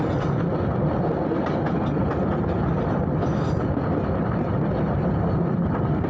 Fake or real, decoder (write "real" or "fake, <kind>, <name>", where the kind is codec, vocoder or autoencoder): real